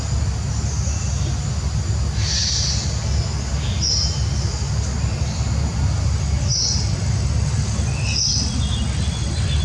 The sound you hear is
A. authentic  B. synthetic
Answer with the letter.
A